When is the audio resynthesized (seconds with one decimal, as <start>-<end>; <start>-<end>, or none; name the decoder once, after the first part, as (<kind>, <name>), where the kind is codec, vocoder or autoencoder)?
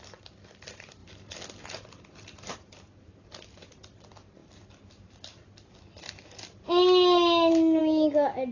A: none